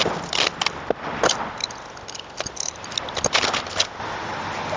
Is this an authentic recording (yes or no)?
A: yes